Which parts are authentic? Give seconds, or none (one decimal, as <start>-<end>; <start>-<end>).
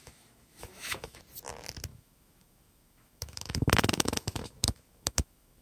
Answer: 1.2-1.9